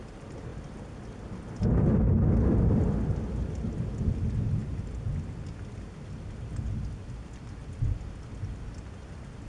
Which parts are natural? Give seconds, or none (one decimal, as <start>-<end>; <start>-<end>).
0.0-9.5